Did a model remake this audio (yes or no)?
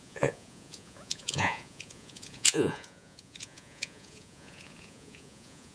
yes